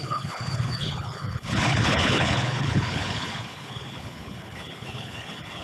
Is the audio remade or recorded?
remade